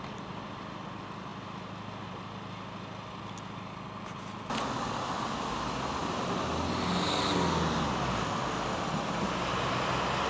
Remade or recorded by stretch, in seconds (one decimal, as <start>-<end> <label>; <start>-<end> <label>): 0.0-10.3 recorded